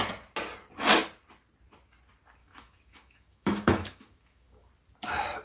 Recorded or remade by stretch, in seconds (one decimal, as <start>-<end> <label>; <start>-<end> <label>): 0.0-2.4 recorded; 2.4-4.7 remade; 4.7-5.4 recorded